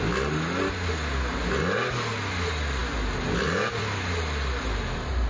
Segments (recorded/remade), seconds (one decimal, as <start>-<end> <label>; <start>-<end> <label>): 0.0-5.3 recorded